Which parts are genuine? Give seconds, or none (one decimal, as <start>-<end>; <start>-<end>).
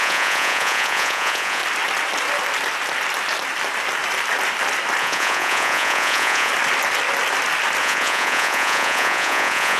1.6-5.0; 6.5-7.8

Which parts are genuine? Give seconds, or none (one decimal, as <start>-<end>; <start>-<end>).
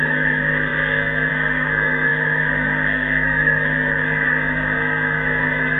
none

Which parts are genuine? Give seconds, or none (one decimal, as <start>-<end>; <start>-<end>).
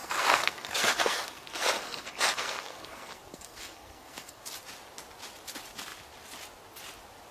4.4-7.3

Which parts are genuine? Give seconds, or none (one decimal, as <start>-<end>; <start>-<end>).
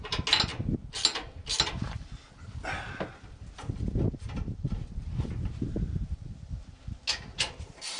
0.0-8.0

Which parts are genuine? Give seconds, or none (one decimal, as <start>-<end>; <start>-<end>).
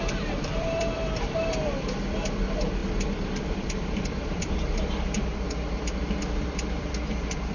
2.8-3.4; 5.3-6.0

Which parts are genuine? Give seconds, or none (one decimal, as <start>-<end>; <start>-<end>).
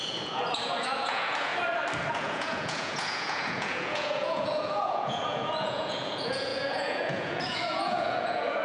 1.5-2.1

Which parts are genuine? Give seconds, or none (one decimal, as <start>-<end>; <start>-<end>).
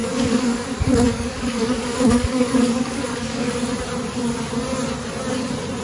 3.5-5.8